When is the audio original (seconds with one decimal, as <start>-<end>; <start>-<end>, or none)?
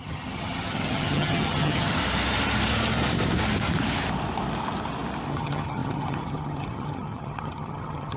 2.0-5.3